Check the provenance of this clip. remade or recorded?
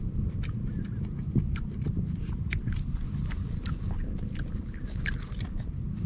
recorded